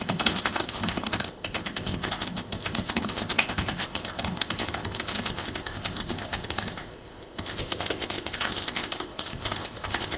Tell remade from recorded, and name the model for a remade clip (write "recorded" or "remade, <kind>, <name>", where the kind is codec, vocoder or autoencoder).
remade, codec, ZipCodec